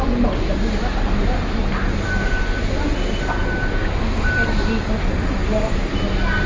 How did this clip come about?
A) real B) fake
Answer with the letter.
A